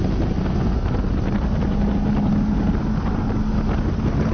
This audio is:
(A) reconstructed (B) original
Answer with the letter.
B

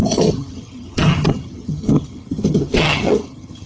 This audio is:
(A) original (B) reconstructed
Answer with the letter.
B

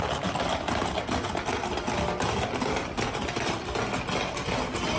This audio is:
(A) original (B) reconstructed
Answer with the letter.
A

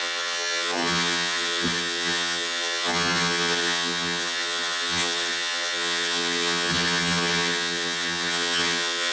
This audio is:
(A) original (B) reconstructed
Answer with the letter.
B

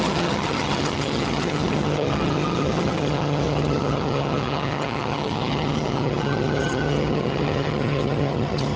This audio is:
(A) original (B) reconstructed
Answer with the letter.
B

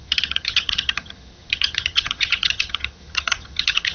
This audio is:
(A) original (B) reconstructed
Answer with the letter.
B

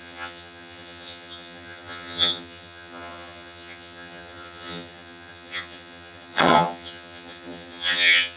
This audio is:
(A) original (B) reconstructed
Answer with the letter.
B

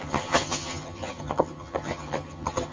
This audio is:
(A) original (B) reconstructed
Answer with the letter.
B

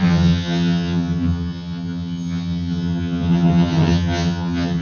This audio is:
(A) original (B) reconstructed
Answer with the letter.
B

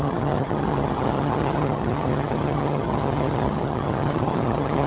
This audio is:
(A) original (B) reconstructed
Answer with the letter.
B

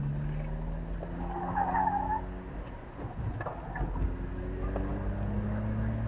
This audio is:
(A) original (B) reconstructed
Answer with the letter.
A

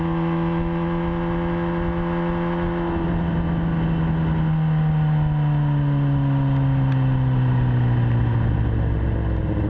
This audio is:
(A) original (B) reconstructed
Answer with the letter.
A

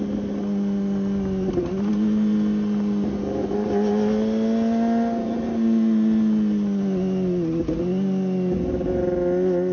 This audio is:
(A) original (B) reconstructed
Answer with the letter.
A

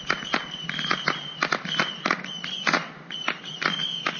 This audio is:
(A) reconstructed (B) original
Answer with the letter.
B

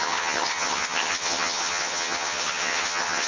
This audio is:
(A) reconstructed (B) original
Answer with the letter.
A